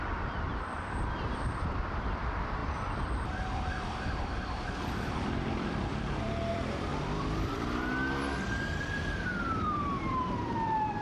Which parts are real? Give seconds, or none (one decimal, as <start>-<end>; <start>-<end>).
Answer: 7.9-8.6